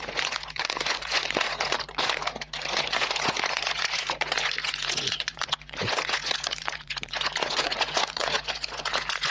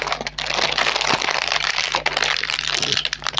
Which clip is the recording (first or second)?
second